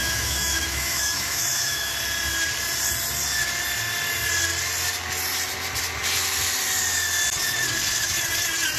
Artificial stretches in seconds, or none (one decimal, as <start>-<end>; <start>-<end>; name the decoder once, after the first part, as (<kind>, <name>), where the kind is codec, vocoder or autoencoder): 0.0-1.9 (autoencoder, DAC-VAE)